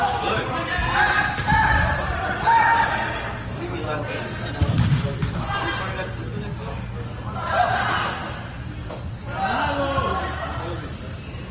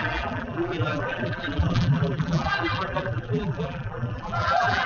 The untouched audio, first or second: first